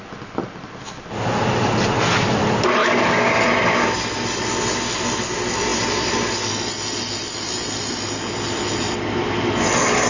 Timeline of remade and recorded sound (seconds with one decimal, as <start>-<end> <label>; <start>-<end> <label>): 0.0-2.8 recorded; 2.8-3.4 remade; 3.4-10.1 recorded